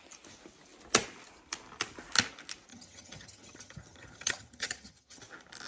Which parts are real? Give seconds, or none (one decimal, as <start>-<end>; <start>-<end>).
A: 0.0-2.7; 5.2-5.7